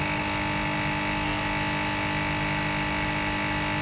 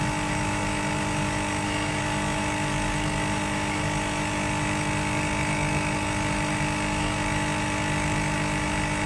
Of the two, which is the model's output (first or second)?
second